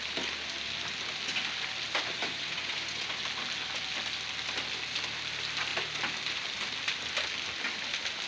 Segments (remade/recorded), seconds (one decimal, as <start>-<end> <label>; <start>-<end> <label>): 0.0-2.2 recorded; 2.2-3.2 remade; 3.2-8.3 recorded

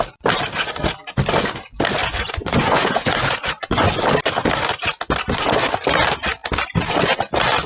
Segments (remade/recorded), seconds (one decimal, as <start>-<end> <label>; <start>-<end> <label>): 0.0-2.0 recorded; 2.0-4.0 remade; 4.0-7.7 recorded